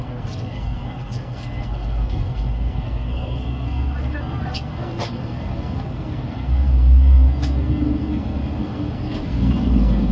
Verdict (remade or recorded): remade